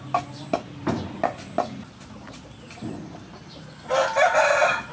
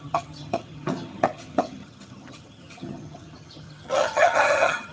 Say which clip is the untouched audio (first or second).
first